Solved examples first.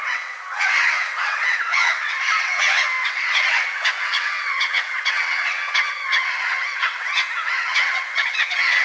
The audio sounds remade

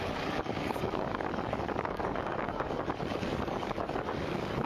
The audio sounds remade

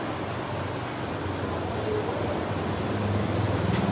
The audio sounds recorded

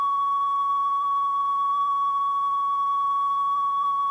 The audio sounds remade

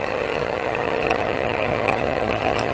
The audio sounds remade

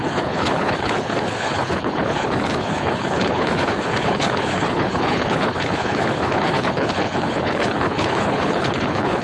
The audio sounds remade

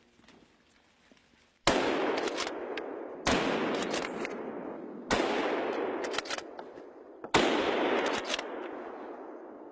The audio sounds recorded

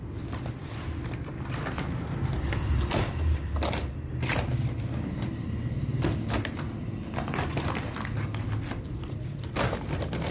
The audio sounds recorded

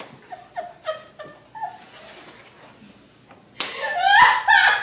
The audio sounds recorded